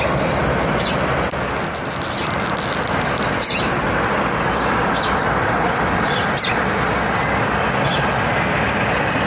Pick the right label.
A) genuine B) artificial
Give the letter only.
A